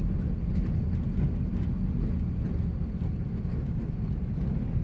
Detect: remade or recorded recorded